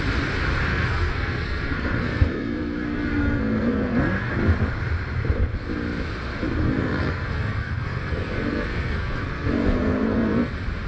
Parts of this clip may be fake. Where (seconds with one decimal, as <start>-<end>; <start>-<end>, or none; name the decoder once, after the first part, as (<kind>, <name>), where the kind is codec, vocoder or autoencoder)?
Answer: 0.7-4.3 (codec, SNAC); 6.6-10.5